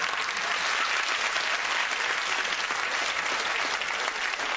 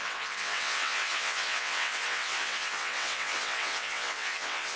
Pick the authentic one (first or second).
first